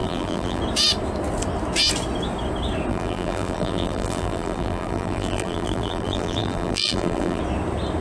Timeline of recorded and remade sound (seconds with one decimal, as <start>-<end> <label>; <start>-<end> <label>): 0.0-0.6 remade; 0.6-2.9 recorded; 2.9-7.4 remade; 7.4-8.0 recorded